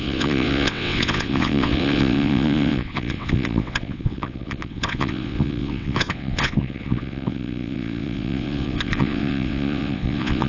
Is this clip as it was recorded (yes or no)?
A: no